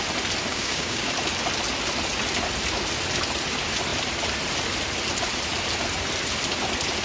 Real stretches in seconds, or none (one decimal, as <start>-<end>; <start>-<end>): 0.0-0.5; 1.1-7.0